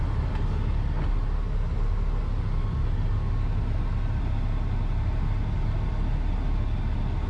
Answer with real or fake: real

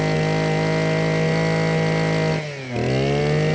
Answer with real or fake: real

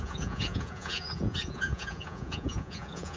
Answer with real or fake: fake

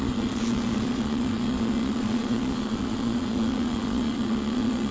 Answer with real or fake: fake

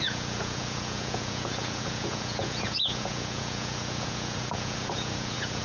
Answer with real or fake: fake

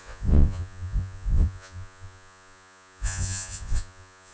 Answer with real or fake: fake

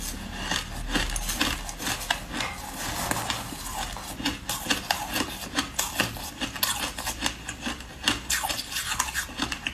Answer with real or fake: real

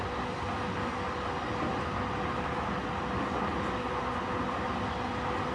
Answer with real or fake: real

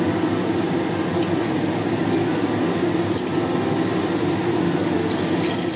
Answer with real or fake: real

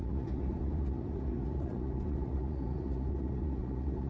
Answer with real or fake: fake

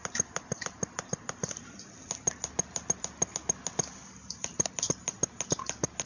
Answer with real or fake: real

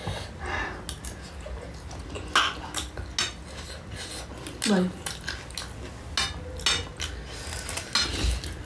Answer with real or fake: real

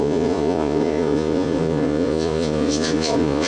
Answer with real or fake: fake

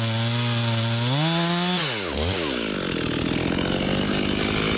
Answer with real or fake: real